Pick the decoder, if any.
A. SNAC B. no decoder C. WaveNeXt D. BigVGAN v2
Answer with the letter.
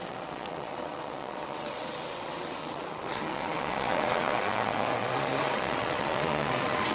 C